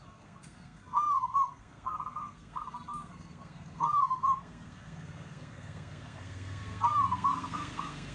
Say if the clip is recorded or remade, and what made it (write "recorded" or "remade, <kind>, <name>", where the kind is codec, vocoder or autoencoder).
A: remade, codec, SNAC